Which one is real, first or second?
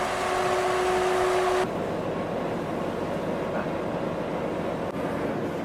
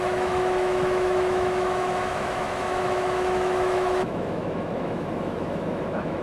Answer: first